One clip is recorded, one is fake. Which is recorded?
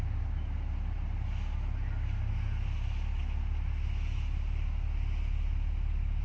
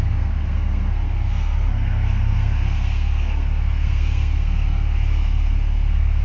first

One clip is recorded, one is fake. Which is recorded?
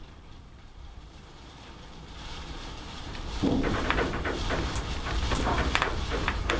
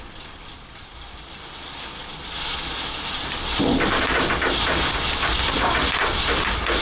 second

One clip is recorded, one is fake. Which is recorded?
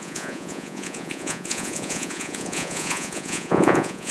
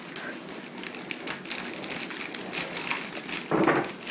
second